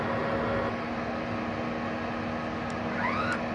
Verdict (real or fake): real